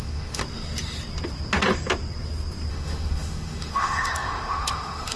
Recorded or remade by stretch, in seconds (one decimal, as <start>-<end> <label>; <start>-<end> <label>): 0.0-0.4 remade; 0.4-2.7 recorded; 2.7-5.2 remade

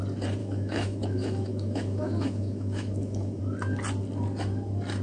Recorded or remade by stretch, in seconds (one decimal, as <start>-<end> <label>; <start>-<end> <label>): 0.0-0.4 recorded; 0.4-3.4 remade; 3.4-5.0 recorded

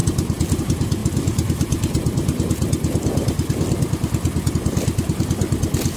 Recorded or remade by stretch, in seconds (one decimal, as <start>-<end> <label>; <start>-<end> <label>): 0.0-6.0 recorded

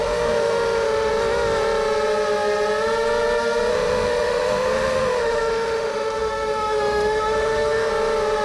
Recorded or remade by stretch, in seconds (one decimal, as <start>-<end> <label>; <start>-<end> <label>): 0.0-1.1 remade; 1.1-3.7 recorded; 3.7-7.9 remade; 7.9-8.4 recorded